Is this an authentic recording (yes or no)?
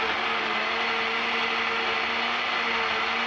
yes